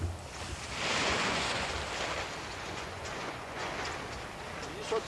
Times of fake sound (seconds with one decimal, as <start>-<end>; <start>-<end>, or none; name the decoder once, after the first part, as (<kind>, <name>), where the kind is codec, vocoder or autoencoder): 1.0-1.7 (vocoder, Vocos); 2.5-3.7

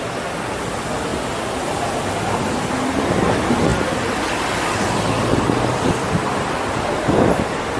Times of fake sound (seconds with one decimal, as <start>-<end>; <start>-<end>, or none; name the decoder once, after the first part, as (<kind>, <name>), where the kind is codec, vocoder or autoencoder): none

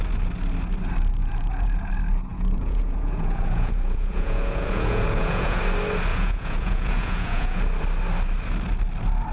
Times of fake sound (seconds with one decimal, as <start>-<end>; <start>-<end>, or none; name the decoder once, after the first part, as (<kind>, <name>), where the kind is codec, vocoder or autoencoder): 1.2-1.9 (vocoder, Vocos); 2.3-5.6; 6.1-7.6

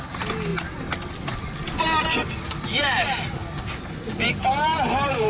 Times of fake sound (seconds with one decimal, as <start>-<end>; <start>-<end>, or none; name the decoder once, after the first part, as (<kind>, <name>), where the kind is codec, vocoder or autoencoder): none